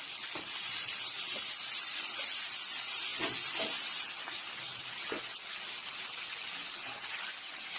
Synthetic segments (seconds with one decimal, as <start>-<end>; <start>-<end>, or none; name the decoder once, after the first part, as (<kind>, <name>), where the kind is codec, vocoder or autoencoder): none

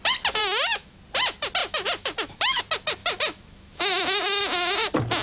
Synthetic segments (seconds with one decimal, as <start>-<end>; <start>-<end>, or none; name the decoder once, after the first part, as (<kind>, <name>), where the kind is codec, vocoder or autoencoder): 0.4-1.0 (autoencoder, DAC-VAE); 1.6-2.6; 3.0-4.4

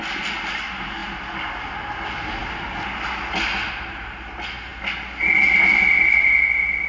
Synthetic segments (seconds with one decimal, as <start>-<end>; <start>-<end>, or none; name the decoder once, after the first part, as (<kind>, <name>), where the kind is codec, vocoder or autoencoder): none

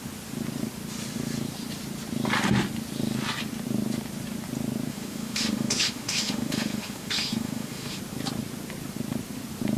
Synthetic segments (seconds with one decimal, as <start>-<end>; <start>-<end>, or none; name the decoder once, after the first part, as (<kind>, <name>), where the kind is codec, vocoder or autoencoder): 4.9-8.0 (autoencoder, DAC-VAE)

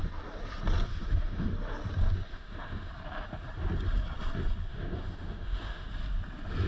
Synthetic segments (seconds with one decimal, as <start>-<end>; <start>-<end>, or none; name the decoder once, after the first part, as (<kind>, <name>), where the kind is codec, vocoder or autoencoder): 0.9-1.5 (autoencoder, DAC-VAE); 2.3-2.9; 4.7-5.9

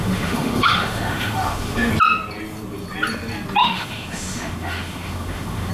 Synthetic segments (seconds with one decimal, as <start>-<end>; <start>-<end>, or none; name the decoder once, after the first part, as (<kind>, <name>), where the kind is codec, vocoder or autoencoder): 0.0-1.9 (autoencoder, DAC-VAE); 3.6-5.7

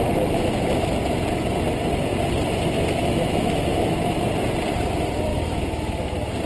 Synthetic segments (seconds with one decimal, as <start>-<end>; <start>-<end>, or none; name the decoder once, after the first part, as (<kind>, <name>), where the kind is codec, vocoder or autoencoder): 3.0-4.3 (autoencoder, DAC-VAE); 5.3-6.1